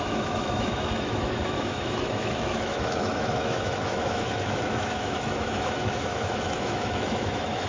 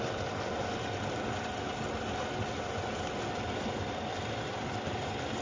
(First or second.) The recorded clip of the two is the second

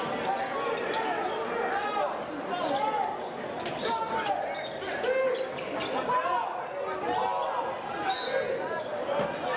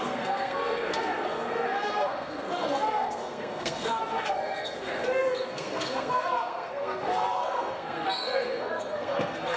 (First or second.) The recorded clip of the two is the first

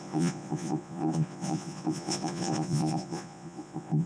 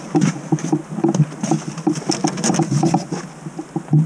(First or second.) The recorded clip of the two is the second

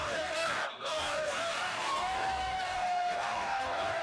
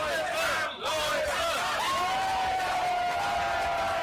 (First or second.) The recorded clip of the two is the second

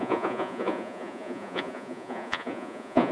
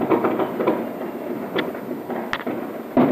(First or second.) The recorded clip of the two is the second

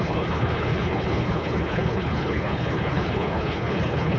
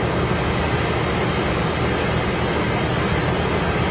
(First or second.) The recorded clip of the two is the second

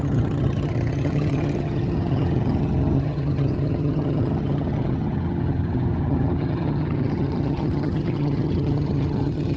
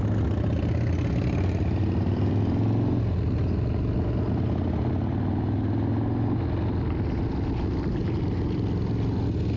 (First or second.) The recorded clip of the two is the second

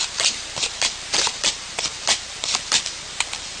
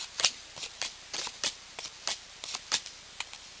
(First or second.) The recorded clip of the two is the second